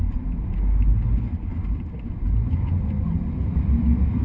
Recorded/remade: recorded